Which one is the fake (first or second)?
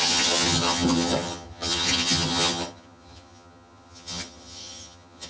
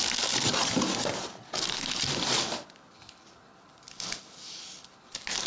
first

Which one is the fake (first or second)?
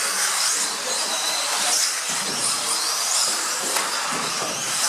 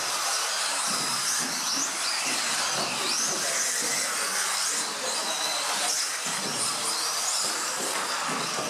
first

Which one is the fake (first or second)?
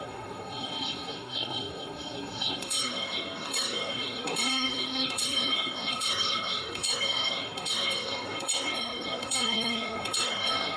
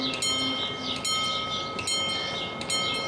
first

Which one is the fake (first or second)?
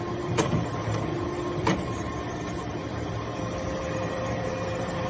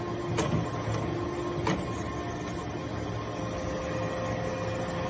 first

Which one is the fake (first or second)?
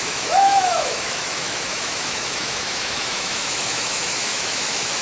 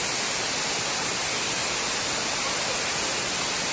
first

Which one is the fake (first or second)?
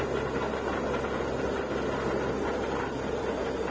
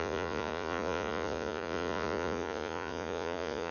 second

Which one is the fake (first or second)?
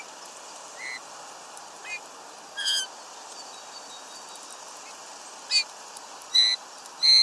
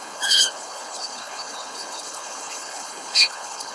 second